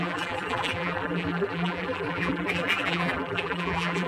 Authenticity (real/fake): fake